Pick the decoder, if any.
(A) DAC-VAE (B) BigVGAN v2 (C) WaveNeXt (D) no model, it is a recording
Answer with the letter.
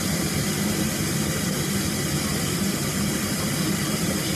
D